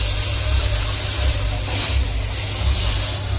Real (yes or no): yes